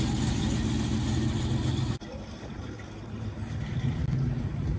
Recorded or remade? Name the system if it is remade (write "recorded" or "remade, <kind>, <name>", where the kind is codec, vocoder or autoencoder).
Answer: recorded